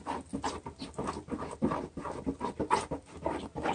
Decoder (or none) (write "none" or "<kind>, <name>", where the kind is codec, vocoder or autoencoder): none